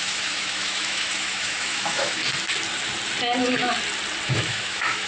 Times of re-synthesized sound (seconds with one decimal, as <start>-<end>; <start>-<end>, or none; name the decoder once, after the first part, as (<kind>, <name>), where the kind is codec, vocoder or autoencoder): 0.0-2.2 (autoencoder, DAC-VAE); 4.3-5.1